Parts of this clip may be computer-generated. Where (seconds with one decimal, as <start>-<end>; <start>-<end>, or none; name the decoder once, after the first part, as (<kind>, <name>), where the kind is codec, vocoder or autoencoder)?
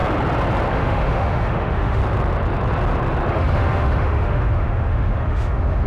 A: 0.7-2.0 (autoencoder, DAC-VAE); 3.3-5.9